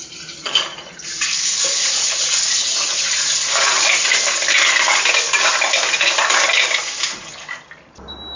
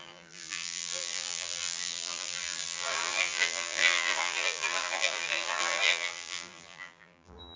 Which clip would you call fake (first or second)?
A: second